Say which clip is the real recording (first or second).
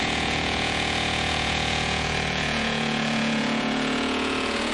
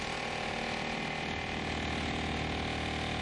second